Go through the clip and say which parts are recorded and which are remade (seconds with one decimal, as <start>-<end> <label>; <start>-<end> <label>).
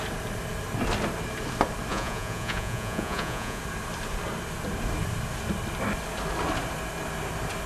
0.0-1.9 recorded; 1.9-3.6 remade; 3.6-7.7 recorded